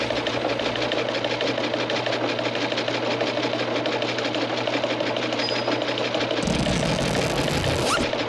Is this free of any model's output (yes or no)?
yes